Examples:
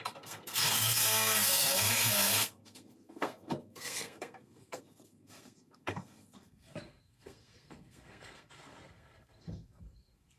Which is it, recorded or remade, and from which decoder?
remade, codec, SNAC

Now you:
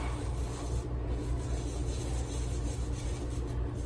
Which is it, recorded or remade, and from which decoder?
recorded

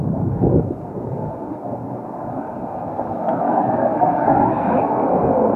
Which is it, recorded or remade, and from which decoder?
remade, codec, SNAC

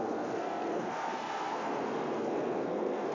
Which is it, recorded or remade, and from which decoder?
remade, codec, SNAC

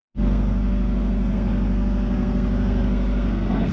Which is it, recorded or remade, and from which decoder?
remade, codec, SNAC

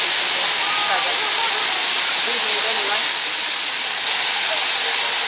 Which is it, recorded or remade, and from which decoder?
recorded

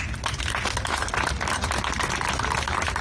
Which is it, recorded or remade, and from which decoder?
recorded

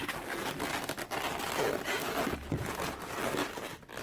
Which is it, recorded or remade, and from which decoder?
recorded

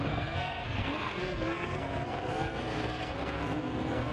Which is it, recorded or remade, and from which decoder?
remade, codec, SNAC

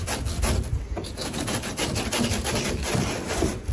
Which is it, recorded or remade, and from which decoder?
recorded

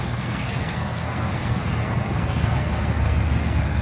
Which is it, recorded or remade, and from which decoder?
remade, codec, SNAC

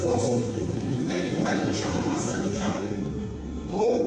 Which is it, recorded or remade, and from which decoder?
remade, codec, SNAC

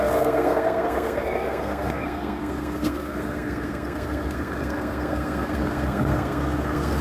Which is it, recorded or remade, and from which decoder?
remade, codec, SNAC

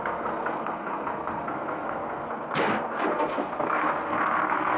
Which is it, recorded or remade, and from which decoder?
remade, codec, SNAC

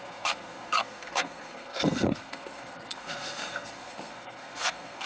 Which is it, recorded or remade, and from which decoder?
remade, codec, SNAC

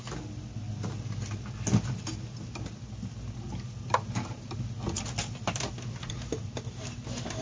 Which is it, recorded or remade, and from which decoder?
recorded